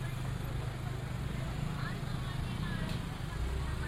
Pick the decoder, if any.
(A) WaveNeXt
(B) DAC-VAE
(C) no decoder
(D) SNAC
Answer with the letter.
C